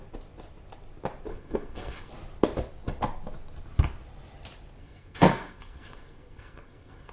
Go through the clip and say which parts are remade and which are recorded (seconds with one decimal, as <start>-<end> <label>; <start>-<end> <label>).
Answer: 0.0-1.3 recorded; 1.3-2.1 remade; 2.1-4.8 recorded; 4.8-7.1 remade